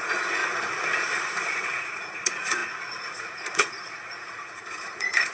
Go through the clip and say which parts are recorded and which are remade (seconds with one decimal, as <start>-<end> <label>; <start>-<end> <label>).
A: 0.0-0.4 remade; 0.4-1.4 recorded; 1.4-5.3 remade